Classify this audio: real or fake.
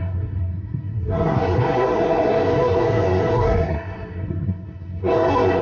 fake